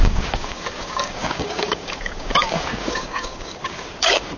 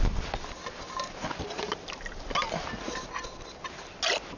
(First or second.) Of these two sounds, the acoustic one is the second